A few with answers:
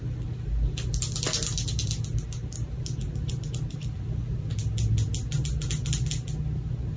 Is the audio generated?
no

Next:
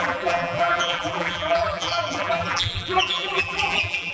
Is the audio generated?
yes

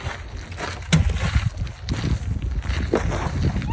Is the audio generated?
no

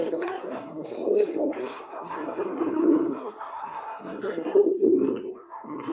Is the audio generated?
yes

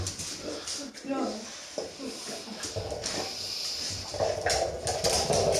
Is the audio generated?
no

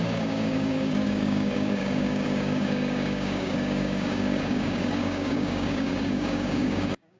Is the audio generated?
yes